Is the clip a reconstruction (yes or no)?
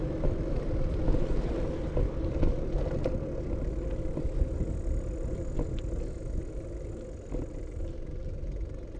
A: no